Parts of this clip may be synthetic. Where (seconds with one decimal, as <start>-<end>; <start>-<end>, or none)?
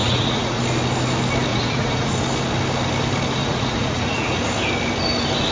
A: 0.0-0.6; 1.5-2.1; 3.4-4.4